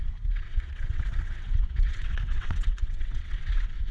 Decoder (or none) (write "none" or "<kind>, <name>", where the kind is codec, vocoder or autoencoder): vocoder, WaveNeXt